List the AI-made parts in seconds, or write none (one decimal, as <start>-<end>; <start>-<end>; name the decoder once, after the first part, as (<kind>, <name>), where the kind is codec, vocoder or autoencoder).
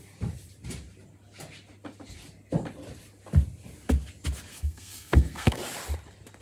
4.5-5.6 (codec, SNAC)